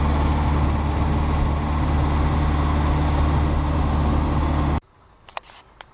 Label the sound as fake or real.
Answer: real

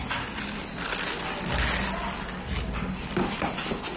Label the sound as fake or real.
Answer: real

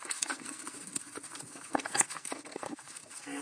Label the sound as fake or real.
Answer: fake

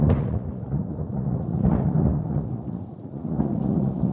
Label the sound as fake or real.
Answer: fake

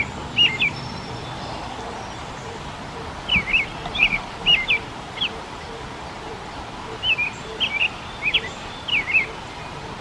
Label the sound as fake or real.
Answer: fake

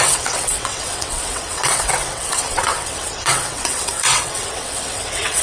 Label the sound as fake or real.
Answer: fake